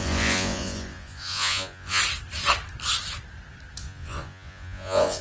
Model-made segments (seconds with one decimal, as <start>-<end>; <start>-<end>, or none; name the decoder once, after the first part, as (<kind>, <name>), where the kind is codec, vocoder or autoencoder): 0.0-2.0 (vocoder, Vocos); 3.8-5.2